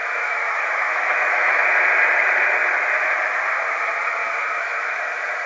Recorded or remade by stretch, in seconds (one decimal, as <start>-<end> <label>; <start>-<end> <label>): 0.0-1.6 remade; 1.6-4.2 recorded; 4.2-5.0 remade; 5.0-5.5 recorded